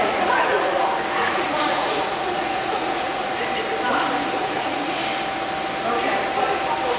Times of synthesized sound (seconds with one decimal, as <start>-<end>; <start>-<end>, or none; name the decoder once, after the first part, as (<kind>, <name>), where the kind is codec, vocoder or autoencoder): 0.0-0.7 (vocoder, Vocos); 1.2-3.4; 4.4-5.0